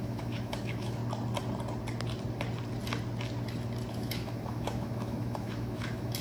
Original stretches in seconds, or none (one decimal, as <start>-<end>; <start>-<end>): 1.0-3.9